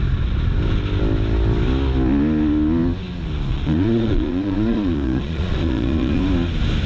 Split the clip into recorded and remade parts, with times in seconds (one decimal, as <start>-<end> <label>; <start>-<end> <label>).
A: 0.0-3.5 recorded; 3.5-6.2 remade; 6.2-6.9 recorded